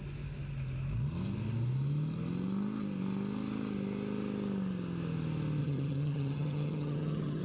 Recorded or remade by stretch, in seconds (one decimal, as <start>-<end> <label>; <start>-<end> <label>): 0.0-5.6 recorded; 5.6-7.4 remade